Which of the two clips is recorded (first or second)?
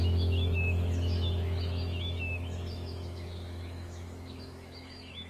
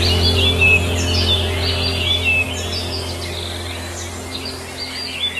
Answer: second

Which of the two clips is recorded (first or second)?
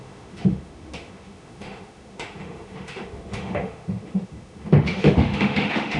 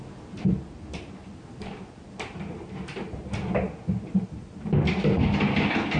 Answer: second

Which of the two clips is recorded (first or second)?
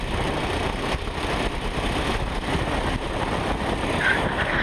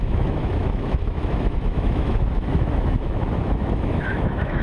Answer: first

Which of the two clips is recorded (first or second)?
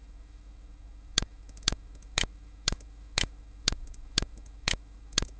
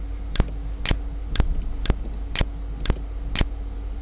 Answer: second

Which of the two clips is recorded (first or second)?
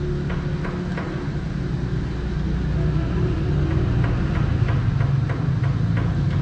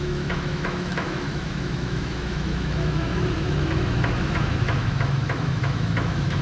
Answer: first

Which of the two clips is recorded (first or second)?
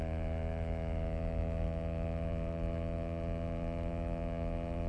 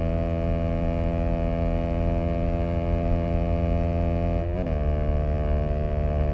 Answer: second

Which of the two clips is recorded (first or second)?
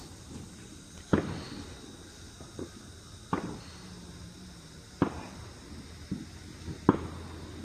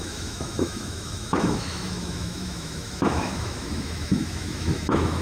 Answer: first